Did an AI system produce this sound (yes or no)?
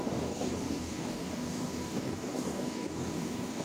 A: yes